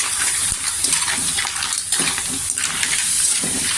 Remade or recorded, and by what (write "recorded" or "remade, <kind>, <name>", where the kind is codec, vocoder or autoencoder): remade, vocoder, BigVGAN v2